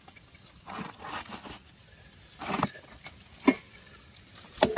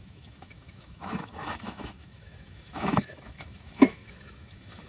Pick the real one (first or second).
first